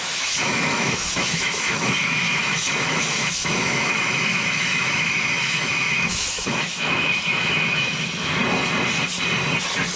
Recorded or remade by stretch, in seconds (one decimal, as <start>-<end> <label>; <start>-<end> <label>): 0.0-8.4 remade; 8.4-10.0 recorded